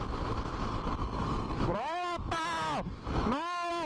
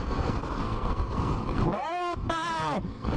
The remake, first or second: second